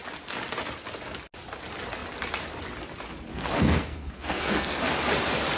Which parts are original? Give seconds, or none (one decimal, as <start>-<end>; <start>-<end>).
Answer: 0.0-3.3; 4.8-5.6